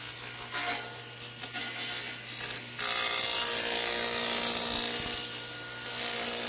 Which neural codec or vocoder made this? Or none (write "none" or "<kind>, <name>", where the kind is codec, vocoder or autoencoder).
none